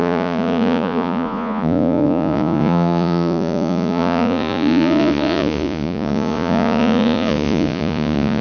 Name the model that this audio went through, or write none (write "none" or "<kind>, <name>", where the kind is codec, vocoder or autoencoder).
vocoder, Vocos